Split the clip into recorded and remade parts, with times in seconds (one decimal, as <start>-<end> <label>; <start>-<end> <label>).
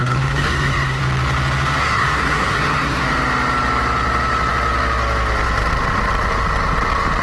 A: 0.0-1.0 remade; 1.0-1.8 recorded; 1.8-3.0 remade; 3.0-7.2 recorded